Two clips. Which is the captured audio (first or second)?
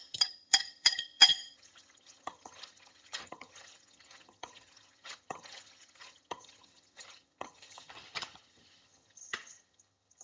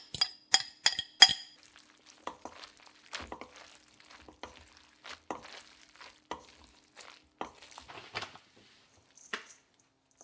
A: second